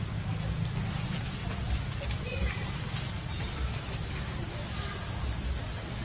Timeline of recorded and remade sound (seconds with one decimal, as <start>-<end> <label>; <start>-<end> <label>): 0.0-6.0 recorded

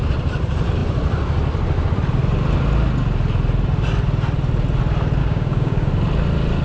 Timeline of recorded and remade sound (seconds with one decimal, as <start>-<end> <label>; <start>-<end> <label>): 0.0-5.2 recorded; 5.2-5.9 remade; 5.9-6.6 recorded

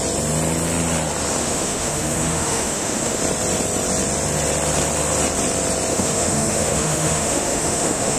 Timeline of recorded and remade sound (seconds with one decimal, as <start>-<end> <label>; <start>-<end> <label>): 0.0-1.4 recorded; 1.4-3.2 remade; 3.2-5.9 recorded; 5.9-8.2 remade

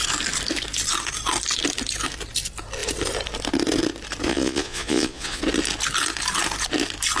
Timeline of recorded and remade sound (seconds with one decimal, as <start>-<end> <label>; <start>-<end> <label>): 0.0-4.3 recorded; 4.3-5.4 remade; 5.4-7.2 recorded

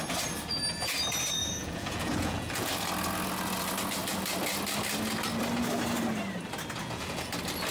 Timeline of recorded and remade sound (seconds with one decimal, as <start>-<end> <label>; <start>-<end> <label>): 0.0-1.4 recorded; 1.4-2.7 remade; 2.7-6.8 recorded; 6.8-7.3 remade; 7.3-7.7 recorded